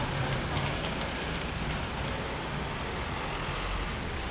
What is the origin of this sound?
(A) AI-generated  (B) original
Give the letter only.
B